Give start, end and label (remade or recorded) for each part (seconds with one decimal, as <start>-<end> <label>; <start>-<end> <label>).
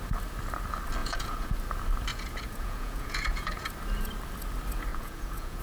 0.0-1.0 recorded; 1.0-1.6 remade; 1.6-2.1 recorded; 2.1-3.7 remade; 3.7-4.9 recorded; 4.9-5.6 remade